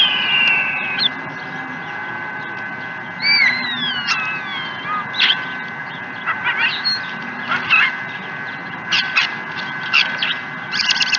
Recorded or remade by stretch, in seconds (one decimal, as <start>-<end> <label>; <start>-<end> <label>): 0.0-11.2 recorded